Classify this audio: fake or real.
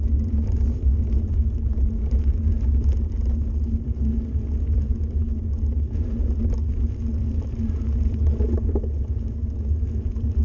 real